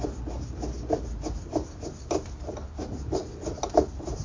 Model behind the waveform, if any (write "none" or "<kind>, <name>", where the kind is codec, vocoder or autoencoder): none